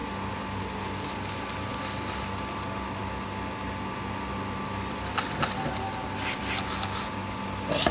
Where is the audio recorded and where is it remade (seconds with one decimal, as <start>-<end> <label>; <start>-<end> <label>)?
0.0-7.9 recorded